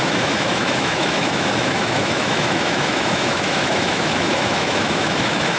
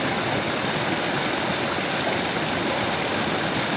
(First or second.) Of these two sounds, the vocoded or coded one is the first